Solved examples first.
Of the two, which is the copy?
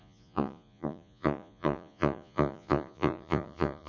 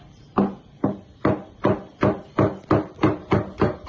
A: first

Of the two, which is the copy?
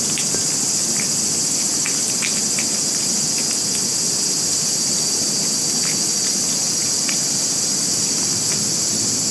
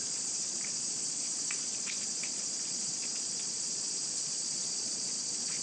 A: second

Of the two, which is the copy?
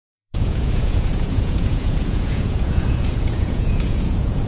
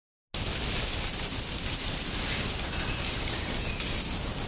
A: first